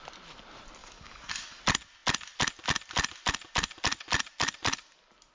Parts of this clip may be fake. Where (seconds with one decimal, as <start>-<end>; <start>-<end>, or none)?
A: 0.8-1.6